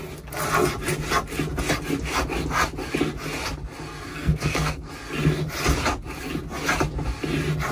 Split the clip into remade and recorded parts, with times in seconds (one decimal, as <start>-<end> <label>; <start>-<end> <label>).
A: 0.0-4.1 recorded; 4.1-4.9 remade; 4.9-7.7 recorded